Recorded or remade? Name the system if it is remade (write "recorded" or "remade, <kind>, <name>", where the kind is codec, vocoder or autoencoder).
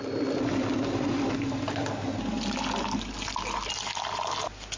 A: recorded